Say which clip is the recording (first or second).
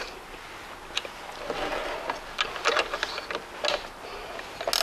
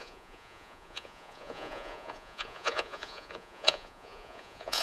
first